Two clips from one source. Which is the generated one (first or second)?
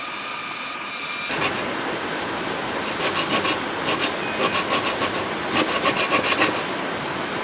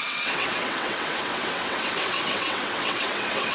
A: second